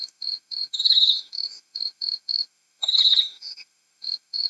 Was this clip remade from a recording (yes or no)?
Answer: yes